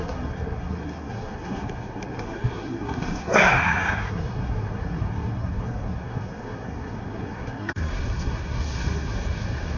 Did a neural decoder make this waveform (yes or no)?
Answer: yes